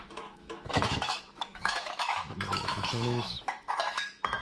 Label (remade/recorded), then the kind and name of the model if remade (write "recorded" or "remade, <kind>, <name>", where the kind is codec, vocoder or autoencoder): remade, autoencoder, DAC-VAE